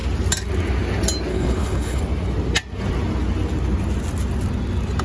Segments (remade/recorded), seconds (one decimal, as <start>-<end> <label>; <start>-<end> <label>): 0.0-1.3 recorded; 1.3-2.0 remade; 2.0-5.0 recorded